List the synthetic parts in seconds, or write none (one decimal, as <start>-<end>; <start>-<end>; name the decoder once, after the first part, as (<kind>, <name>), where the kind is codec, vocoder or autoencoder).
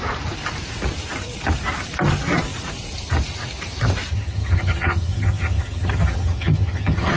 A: 4.1-7.2 (vocoder, HiFi-GAN)